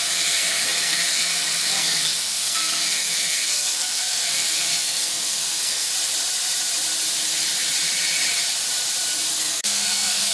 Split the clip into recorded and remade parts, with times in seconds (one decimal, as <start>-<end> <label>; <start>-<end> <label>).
0.0-5.9 remade; 5.9-9.4 recorded; 9.4-10.3 remade